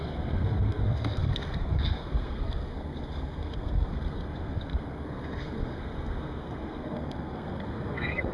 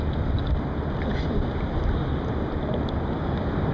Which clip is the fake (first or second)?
first